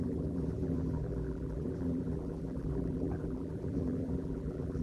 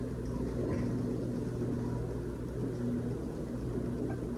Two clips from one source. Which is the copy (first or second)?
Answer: first